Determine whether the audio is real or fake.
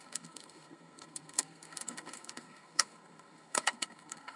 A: fake